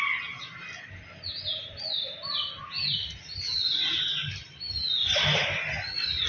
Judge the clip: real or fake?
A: real